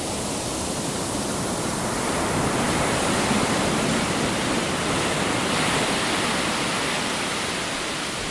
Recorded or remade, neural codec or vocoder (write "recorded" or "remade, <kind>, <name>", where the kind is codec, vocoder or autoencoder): recorded